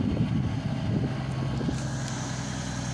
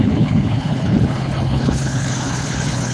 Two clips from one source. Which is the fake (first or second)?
second